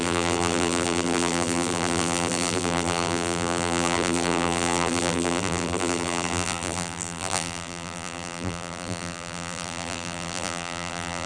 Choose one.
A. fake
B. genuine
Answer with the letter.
A